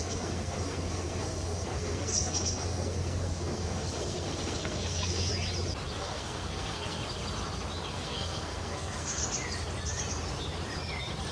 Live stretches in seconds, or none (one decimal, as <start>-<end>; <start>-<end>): 5.3-6.0; 7.0-7.9; 9.2-11.3